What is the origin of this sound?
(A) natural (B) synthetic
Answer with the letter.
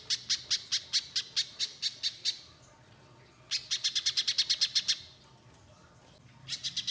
A